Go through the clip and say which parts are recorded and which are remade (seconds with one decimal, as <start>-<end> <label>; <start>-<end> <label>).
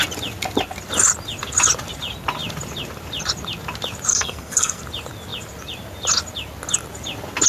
0.0-4.1 recorded; 4.1-4.8 remade; 4.8-7.5 recorded